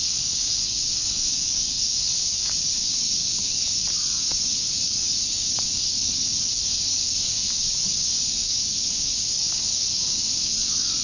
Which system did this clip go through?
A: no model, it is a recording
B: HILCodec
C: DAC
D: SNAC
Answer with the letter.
C